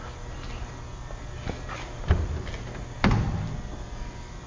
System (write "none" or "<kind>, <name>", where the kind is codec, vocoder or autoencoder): none